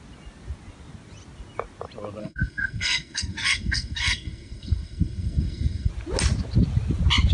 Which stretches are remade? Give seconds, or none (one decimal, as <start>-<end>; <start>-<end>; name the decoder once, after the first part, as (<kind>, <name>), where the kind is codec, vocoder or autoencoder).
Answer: 2.2-5.9 (codec, SNAC)